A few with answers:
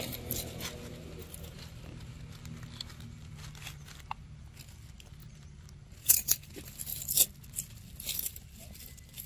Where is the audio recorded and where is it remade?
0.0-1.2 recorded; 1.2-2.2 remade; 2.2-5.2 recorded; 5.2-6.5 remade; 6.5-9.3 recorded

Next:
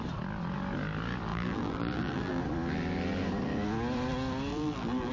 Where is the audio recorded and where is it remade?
0.0-1.3 recorded; 1.3-2.4 remade; 2.4-4.5 recorded; 4.5-5.1 remade

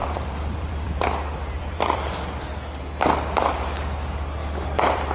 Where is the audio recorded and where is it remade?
0.0-2.4 remade; 2.4-4.4 recorded; 4.4-5.1 remade

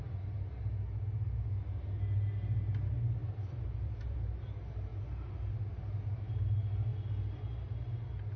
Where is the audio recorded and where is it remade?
0.0-3.2 recorded; 3.2-4.2 remade; 4.2-8.4 recorded

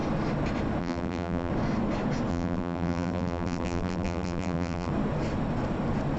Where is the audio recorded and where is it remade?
0.0-0.8 recorded; 0.8-1.5 remade; 1.5-2.3 recorded; 2.3-4.9 remade; 4.9-6.2 recorded